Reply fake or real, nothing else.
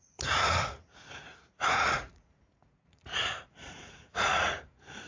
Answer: fake